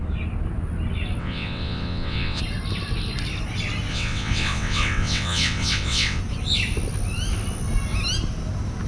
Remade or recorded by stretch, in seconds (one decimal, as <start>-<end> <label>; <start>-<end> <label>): 0.0-1.2 recorded; 1.2-2.4 remade; 2.4-3.9 recorded; 3.9-6.2 remade; 6.2-8.9 recorded